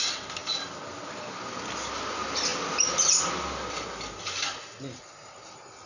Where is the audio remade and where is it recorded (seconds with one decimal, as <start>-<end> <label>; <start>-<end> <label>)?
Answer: 0.0-5.9 recorded